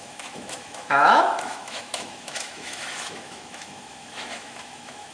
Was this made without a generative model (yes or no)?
no